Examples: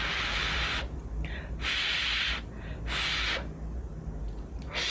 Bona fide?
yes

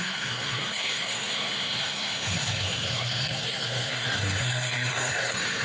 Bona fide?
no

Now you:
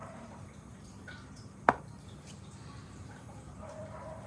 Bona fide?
no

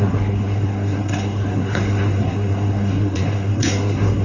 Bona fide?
no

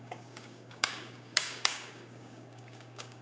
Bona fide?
no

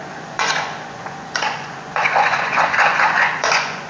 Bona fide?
no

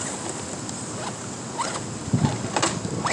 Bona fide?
yes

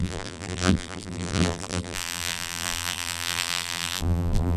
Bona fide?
no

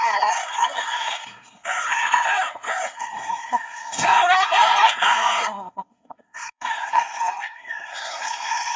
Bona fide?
no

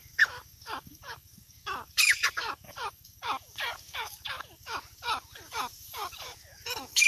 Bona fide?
no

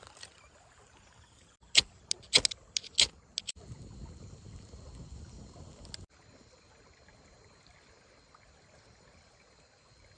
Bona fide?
yes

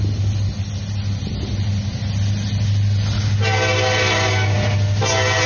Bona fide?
yes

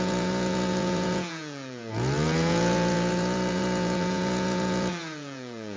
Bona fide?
no